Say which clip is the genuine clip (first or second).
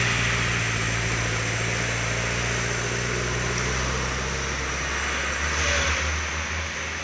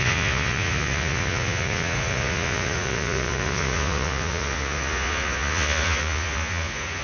first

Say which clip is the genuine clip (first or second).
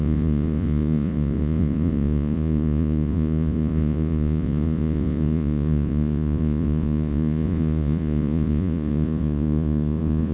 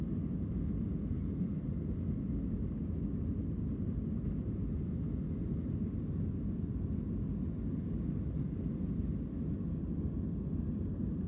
second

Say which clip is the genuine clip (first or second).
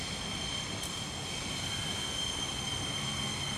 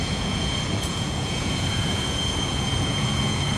first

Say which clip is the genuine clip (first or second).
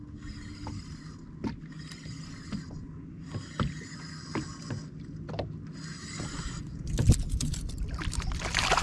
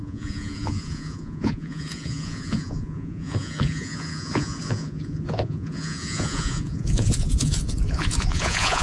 first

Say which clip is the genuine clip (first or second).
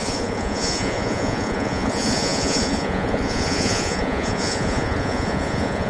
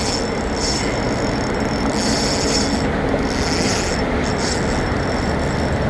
second